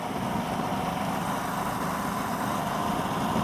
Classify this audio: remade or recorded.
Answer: recorded